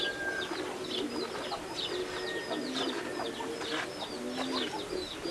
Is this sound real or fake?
real